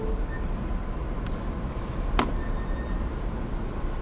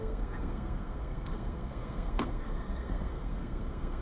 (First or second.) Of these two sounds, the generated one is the second